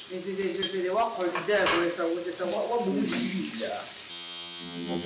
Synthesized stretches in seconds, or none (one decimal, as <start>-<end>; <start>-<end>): 4.1-5.1